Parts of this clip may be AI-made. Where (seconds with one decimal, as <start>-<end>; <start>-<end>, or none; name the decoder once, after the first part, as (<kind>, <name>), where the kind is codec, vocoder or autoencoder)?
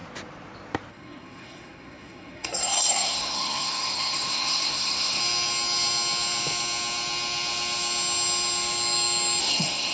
0.9-5.2 (codec, SNAC); 9.4-9.9